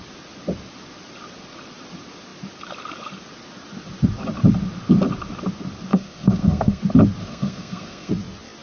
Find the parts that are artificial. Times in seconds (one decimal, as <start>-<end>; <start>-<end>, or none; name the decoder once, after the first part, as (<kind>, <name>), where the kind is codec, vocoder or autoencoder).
5.9-6.8 (codec, SNAC); 7.2-8.1